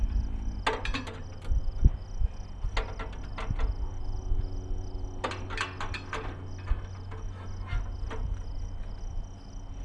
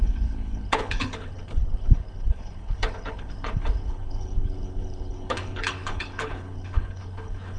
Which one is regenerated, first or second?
second